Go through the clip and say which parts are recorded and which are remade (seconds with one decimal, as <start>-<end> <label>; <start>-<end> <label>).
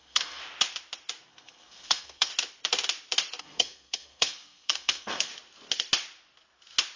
0.0-0.4 remade; 0.4-1.3 recorded; 1.3-2.3 remade; 2.3-3.4 recorded; 3.4-5.3 remade; 5.3-7.0 recorded